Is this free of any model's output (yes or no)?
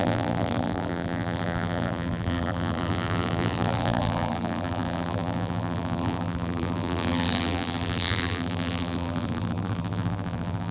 no